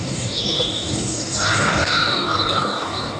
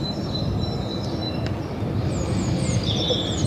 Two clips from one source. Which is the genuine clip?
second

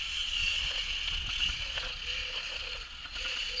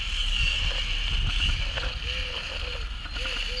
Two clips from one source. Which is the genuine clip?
second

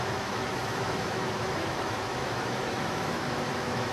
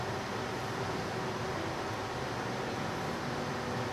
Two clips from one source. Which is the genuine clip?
second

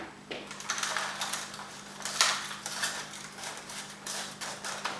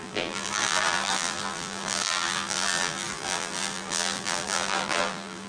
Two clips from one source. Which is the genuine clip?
first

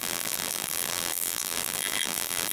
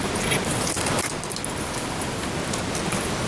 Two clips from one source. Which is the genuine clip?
second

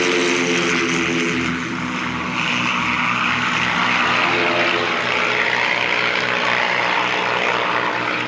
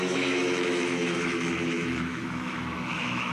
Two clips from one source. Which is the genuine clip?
first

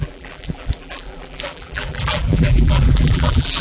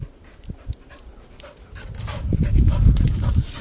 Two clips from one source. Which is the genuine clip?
second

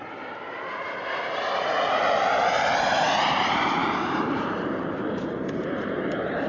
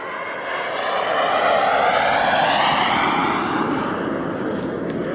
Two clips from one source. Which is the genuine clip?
second